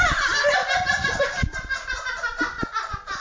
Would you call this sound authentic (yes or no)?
yes